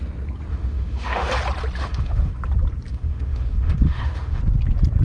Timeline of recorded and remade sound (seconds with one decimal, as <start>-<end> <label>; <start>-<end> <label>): 0.0-0.5 recorded; 0.5-1.3 remade; 1.3-1.8 recorded; 1.8-2.3 remade; 2.3-2.9 recorded; 2.9-4.4 remade; 4.4-5.0 recorded